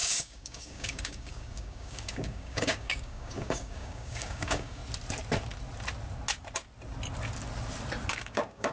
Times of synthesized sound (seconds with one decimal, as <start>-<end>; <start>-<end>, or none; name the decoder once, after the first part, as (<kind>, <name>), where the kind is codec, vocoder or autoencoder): 0.0-4.8 (codec, DAC); 8.1-8.7